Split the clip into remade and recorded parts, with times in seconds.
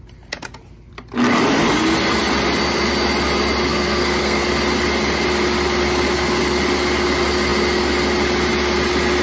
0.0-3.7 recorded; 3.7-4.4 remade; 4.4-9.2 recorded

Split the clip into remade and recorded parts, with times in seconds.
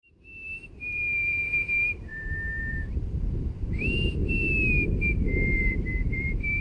0.0-2.1 remade; 2.1-2.7 recorded; 2.7-4.2 remade; 4.2-5.6 recorded; 5.6-6.6 remade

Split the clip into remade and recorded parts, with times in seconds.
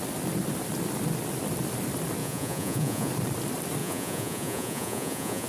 0.0-2.2 recorded; 2.2-3.1 remade; 3.1-3.8 recorded; 3.8-5.5 remade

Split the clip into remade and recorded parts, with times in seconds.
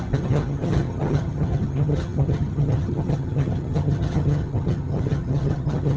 0.0-6.0 remade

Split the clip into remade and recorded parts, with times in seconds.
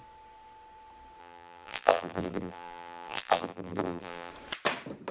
0.0-1.2 recorded; 1.2-4.3 remade; 4.3-5.1 recorded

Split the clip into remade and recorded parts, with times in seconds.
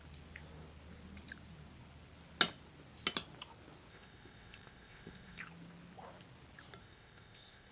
0.0-3.9 recorded; 3.9-5.4 remade; 5.4-6.8 recorded; 6.8-7.7 remade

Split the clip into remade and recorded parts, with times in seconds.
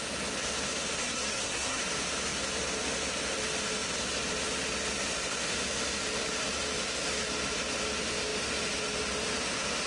0.0-1.0 recorded; 1.0-1.8 remade; 1.8-9.9 recorded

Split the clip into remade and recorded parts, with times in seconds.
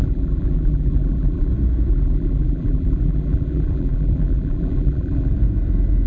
0.0-1.5 remade; 1.5-1.9 recorded; 1.9-5.3 remade; 5.3-6.1 recorded